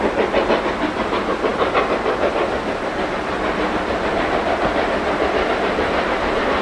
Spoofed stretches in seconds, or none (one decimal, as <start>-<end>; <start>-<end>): none